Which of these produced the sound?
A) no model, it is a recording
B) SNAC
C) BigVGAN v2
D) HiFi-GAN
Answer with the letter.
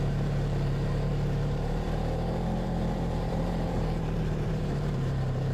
C